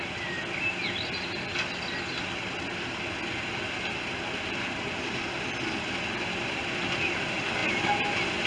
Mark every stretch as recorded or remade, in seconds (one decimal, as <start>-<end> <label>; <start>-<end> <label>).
0.0-8.5 recorded

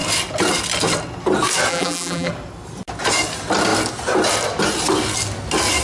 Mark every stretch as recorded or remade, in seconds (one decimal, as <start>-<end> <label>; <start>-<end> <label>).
0.0-1.7 recorded; 1.7-2.3 remade; 2.3-5.8 recorded